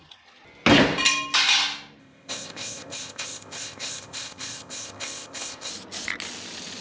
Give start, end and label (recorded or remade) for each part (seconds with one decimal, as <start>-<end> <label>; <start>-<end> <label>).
0.0-2.0 recorded; 2.0-5.7 remade; 5.7-6.8 recorded